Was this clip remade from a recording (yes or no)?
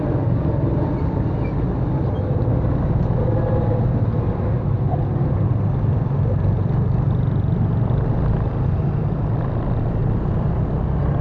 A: no